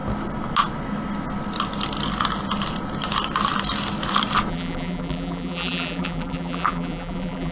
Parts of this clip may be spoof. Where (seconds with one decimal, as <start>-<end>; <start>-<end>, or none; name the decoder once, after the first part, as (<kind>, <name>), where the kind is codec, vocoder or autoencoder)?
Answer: 4.5-7.5 (vocoder, BigVGAN v2)